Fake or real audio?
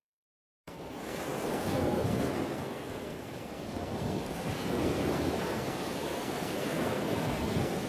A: fake